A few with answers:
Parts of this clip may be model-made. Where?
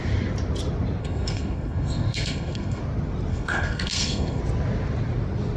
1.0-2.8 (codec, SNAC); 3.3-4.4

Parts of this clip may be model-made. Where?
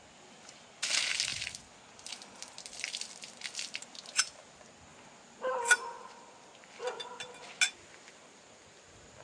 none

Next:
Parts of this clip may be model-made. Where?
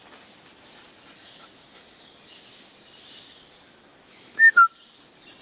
3.9-4.5 (autoencoder, DAC-VAE)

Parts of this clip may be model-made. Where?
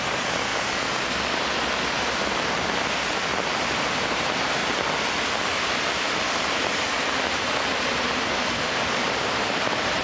0.0-0.5 (vocoder, BigVGAN v2); 1.9-3.3; 3.9-4.6; 7.9-10.0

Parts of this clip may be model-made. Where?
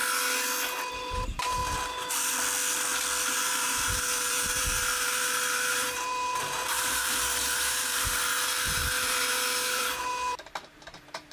0.9-1.6 (vocoder, BigVGAN v2); 3.4-11.3